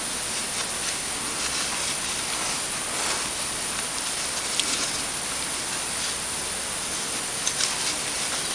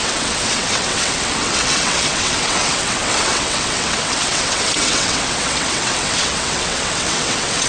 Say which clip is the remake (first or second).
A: second